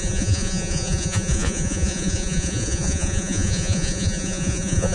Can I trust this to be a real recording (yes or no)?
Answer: no